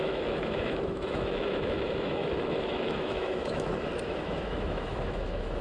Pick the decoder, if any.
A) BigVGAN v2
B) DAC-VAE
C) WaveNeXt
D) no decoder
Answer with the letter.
B